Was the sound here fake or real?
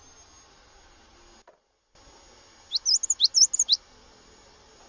real